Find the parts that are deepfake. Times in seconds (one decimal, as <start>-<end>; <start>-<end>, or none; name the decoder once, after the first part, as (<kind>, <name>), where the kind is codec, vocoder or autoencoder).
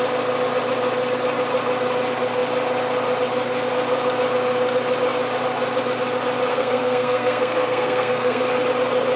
6.5-8.4 (codec, SNAC)